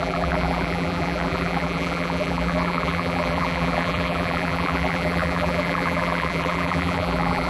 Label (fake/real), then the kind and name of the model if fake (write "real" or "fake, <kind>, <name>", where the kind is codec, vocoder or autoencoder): fake, vocoder, BigVGAN v2